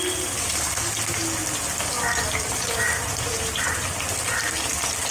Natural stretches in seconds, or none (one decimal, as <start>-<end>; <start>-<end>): 0.0-5.1